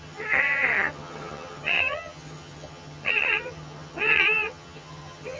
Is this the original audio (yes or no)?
no